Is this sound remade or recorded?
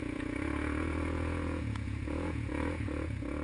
remade